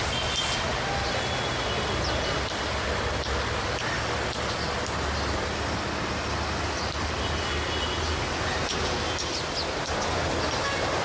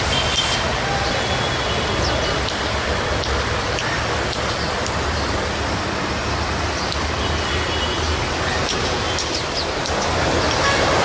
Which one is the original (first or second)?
first